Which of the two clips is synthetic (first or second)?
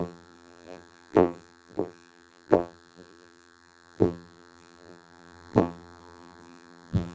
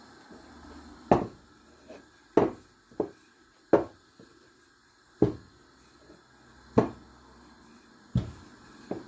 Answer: first